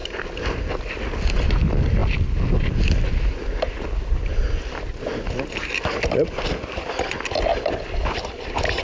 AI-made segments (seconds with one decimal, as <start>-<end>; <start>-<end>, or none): none